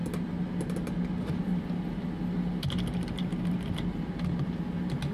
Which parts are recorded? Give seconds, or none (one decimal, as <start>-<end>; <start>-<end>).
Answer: 0.0-5.1